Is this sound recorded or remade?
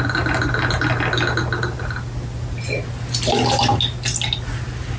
recorded